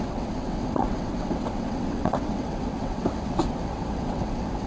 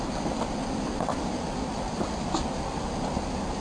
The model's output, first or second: first